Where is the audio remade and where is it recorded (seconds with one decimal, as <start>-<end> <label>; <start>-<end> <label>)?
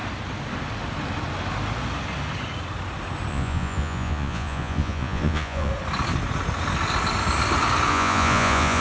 0.0-3.3 recorded; 3.3-5.7 remade; 5.7-7.9 recorded; 7.9-8.8 remade